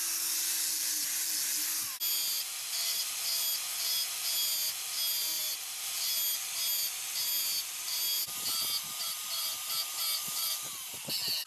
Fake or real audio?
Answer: real